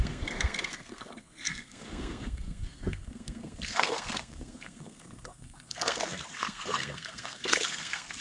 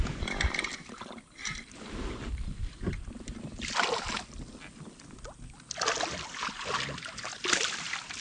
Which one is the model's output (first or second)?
first